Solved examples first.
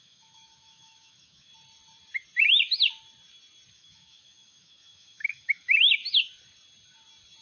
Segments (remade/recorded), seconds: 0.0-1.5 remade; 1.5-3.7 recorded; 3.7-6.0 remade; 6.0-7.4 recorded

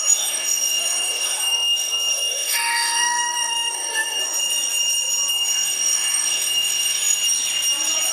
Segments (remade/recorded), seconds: 0.0-4.2 remade; 4.2-5.3 recorded; 5.3-7.2 remade; 7.2-8.1 recorded

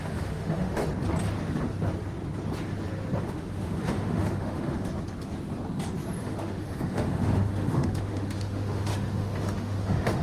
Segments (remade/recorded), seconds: 0.0-0.8 remade; 0.8-3.2 recorded; 3.2-4.9 remade; 4.9-6.2 recorded; 6.2-10.2 remade

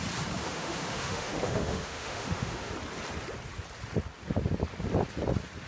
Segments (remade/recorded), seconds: 0.0-0.4 recorded; 0.4-2.7 remade; 2.7-5.7 recorded

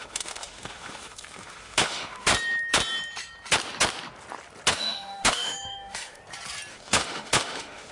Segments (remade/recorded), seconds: 0.0-2.3 remade; 2.3-4.7 recorded; 4.7-6.2 remade; 6.2-6.7 recorded; 6.7-7.9 remade

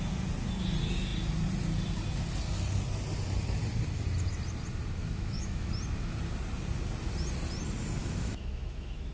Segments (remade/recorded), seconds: 0.0-5.0 recorded; 5.0-5.7 remade; 5.7-8.0 recorded; 8.0-9.1 remade

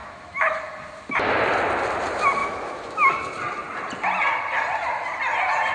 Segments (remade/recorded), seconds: 0.0-0.6 remade; 0.6-2.4 recorded; 2.4-3.2 remade; 3.2-5.7 recorded